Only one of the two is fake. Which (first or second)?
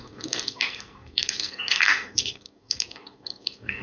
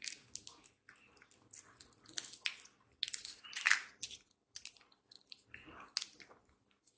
first